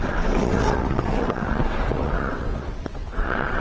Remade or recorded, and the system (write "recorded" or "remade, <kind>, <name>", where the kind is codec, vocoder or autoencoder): remade, vocoder, WaveNeXt